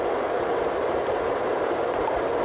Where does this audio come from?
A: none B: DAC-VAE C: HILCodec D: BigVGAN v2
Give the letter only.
D